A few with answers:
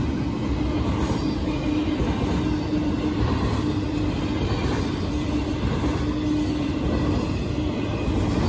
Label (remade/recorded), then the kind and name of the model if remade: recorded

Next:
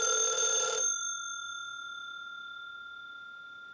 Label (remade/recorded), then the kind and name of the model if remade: recorded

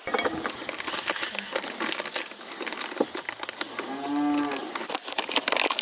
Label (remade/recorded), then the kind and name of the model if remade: recorded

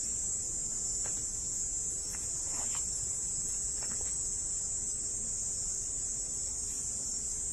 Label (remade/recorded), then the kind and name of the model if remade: recorded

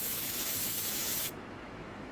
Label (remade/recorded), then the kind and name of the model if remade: remade, autoencoder, DAC-VAE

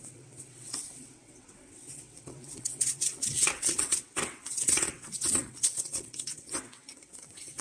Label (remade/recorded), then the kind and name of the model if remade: remade, vocoder, WaveNeXt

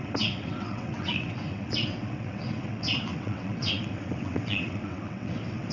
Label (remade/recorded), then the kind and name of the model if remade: remade, vocoder, WaveNeXt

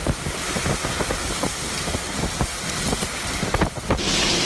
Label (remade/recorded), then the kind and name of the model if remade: recorded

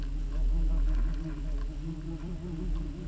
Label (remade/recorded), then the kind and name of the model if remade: recorded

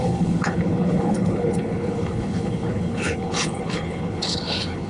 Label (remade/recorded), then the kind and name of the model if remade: remade, codec, HILCodec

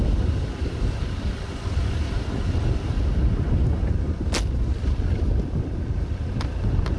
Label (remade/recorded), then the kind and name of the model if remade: recorded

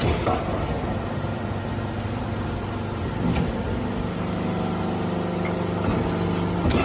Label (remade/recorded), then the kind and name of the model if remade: recorded